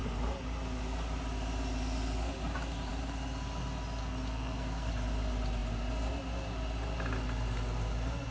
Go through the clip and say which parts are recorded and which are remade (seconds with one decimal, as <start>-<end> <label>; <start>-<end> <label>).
0.0-4.0 recorded; 4.0-4.9 remade; 4.9-8.3 recorded